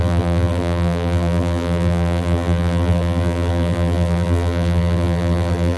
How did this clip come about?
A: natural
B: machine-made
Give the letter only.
B